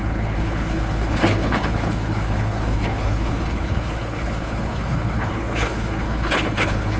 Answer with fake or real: fake